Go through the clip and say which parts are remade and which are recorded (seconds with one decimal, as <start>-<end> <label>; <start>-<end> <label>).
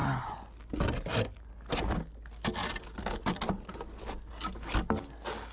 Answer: 0.0-5.5 recorded